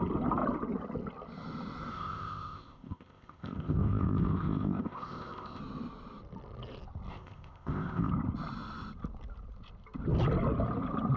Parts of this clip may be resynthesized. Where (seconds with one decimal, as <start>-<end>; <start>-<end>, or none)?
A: 1.9-5.6; 7.1-8.1